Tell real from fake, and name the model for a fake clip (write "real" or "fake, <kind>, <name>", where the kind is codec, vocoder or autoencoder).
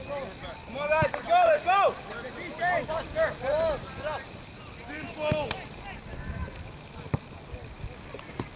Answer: real